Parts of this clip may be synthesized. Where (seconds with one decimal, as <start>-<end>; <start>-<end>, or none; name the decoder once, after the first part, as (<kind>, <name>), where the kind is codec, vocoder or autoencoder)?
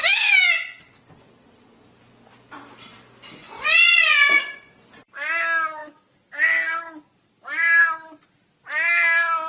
3.4-5.0 (vocoder, Vocos)